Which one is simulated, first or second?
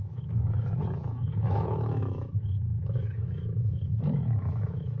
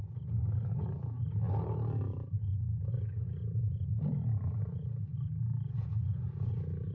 first